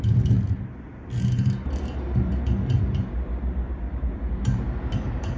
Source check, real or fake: fake